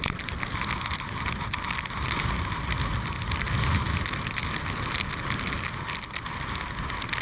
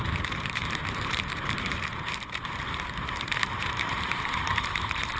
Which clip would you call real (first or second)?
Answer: first